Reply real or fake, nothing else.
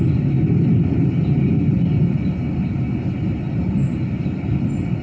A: real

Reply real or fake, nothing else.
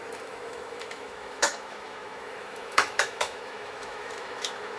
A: fake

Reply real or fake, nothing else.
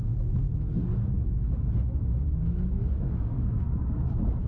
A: fake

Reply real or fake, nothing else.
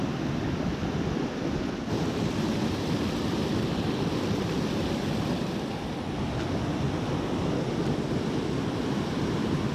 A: real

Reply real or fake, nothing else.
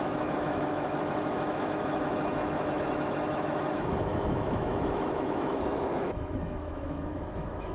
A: fake